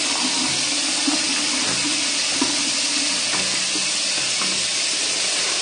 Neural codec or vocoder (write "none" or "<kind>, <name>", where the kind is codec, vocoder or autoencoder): none